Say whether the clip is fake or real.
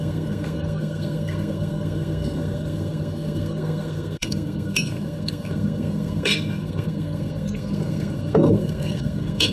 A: fake